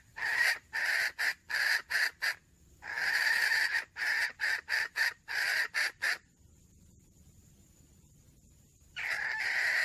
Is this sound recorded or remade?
remade